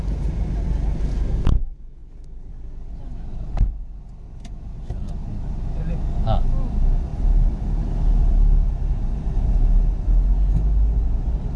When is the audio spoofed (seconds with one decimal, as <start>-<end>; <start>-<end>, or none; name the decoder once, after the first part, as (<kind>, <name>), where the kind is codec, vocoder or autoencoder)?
2.0-2.5 (vocoder, BigVGAN v2); 7.1-8.7